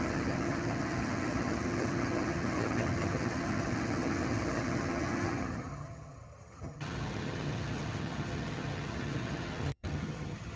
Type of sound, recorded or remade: remade